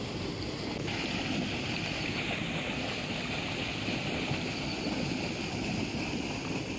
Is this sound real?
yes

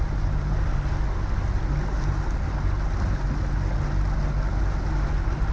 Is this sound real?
yes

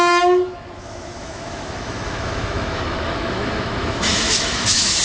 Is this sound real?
no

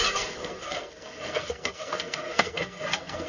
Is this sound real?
no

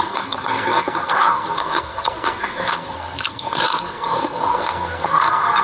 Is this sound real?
no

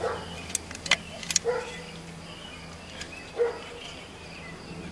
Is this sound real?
yes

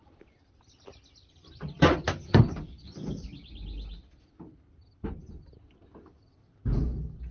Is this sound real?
yes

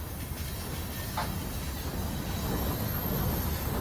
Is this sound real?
yes